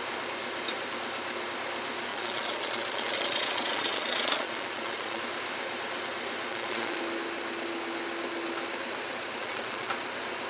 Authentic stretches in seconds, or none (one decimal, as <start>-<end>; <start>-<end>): 0.0-2.1; 5.2-6.5; 7.0-9.4; 9.9-10.5